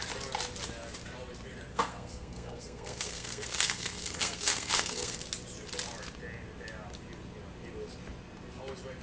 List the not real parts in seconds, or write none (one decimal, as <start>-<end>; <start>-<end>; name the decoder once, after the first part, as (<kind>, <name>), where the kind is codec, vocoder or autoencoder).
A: 1.7-5.2 (codec, SNAC)